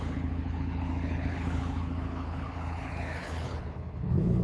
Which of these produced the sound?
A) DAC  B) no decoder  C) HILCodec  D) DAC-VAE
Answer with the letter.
C